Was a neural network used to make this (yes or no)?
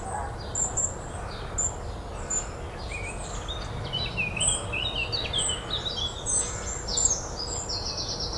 no